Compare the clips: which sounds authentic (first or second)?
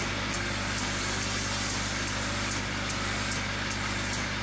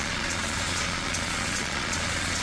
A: first